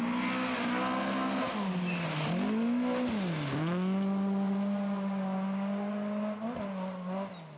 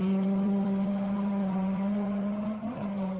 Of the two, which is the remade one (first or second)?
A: second